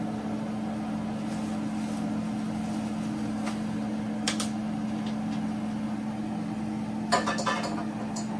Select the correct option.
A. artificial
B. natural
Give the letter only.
B